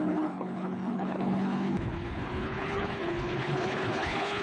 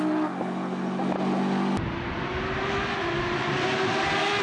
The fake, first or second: first